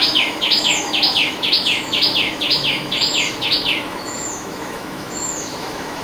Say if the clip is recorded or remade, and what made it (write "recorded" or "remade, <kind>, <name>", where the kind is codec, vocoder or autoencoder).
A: remade, autoencoder, DAC-VAE